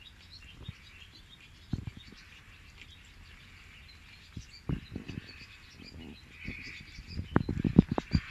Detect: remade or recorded recorded